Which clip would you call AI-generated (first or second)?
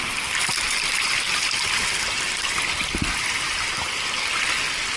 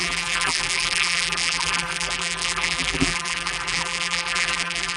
second